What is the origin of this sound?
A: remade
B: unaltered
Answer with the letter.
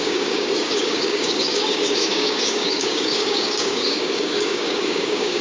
A